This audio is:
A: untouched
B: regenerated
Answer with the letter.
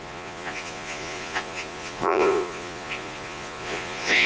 B